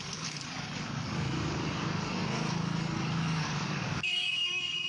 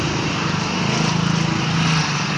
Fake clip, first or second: first